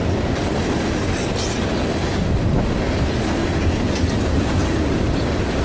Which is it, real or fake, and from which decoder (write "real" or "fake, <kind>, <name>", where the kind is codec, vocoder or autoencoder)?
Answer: real